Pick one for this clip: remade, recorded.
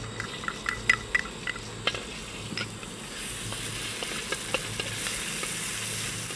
recorded